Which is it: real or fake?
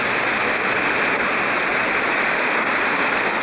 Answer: real